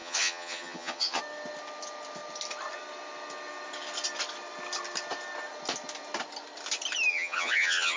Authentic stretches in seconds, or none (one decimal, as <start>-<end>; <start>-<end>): 1.2-7.1